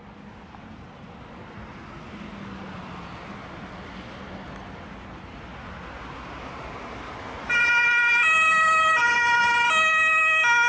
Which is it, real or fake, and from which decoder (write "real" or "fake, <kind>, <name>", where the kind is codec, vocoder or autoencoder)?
real